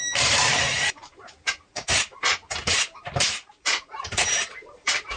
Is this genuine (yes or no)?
no